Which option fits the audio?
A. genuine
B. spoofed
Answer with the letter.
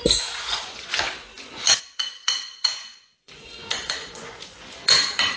B